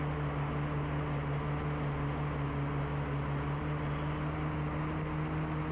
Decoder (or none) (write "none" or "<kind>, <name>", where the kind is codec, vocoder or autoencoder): none